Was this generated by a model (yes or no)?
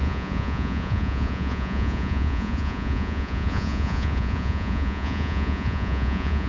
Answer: yes